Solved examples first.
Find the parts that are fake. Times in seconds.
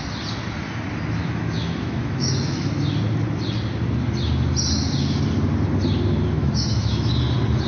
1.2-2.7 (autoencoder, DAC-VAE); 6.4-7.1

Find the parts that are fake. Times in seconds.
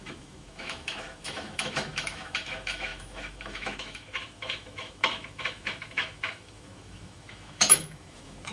0.0-8.5 (autoencoder, DAC-VAE)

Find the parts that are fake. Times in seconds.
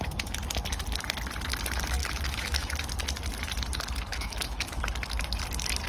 2.0-2.7 (autoencoder, DAC-VAE); 4.1-4.8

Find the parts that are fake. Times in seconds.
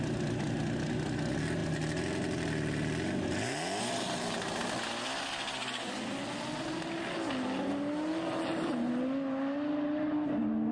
none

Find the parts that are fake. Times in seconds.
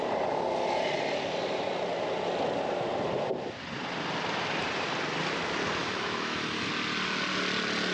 5.8-6.7 (autoencoder, DAC-VAE)